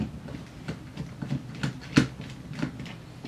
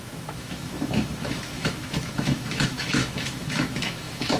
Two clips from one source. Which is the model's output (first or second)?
second